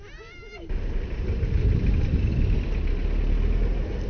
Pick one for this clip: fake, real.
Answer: real